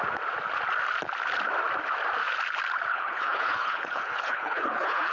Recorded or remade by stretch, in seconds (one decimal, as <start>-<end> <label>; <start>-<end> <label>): 0.0-2.9 recorded; 2.9-5.1 remade